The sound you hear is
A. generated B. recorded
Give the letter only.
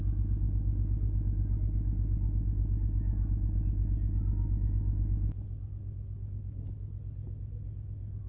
B